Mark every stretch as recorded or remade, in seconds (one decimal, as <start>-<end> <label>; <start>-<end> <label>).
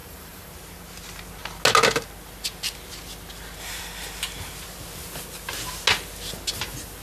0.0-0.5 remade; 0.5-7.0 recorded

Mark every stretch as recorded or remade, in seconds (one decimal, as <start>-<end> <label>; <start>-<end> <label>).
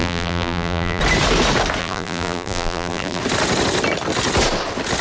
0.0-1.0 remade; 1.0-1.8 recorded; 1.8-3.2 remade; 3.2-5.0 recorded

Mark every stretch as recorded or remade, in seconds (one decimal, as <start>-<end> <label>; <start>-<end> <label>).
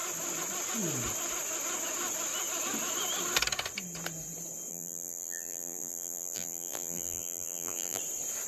0.0-4.7 recorded; 4.7-8.0 remade; 8.0-8.5 recorded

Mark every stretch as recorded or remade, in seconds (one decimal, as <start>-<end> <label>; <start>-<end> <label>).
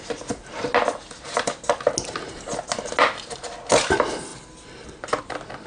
0.0-5.7 recorded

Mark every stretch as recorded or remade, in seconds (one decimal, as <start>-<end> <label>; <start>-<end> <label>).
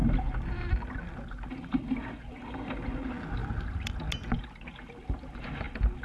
0.0-6.0 recorded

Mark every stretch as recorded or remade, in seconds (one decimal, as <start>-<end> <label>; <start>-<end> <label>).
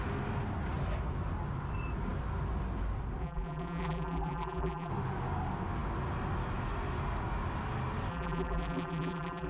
0.0-3.2 recorded; 3.2-4.9 remade; 4.9-8.1 recorded; 8.1-9.5 remade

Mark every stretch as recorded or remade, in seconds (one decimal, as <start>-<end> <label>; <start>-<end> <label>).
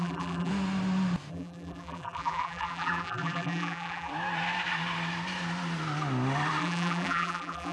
0.0-0.5 remade; 0.5-1.3 recorded; 1.3-4.1 remade; 4.1-6.6 recorded; 6.6-7.7 remade